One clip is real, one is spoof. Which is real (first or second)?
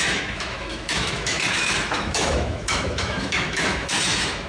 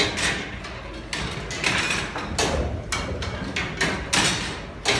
second